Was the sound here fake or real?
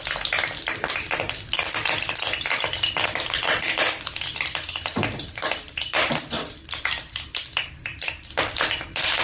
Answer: real